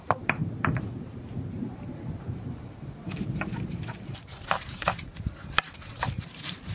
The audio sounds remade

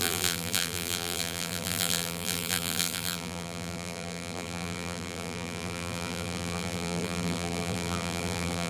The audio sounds remade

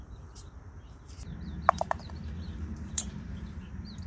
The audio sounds remade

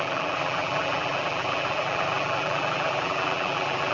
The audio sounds remade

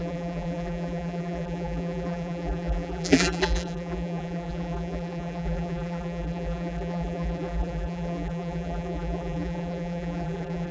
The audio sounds remade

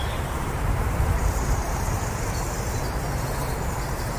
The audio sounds remade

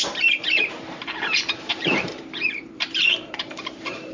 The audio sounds remade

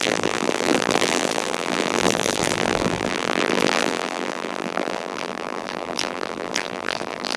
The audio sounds remade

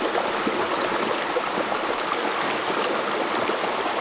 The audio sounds recorded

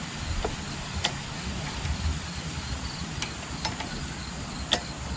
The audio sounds recorded